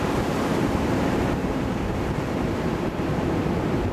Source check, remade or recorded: remade